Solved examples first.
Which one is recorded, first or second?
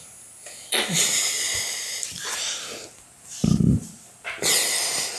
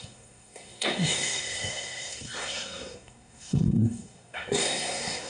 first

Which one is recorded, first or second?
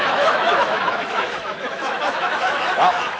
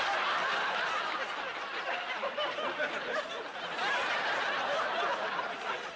second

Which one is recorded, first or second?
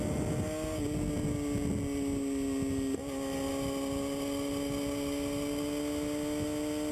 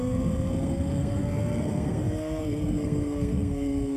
first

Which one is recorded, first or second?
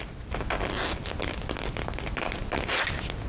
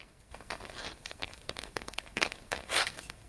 first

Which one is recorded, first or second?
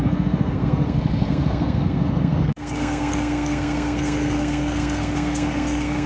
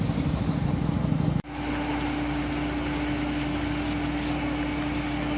second